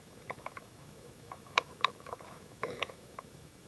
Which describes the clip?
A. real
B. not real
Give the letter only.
B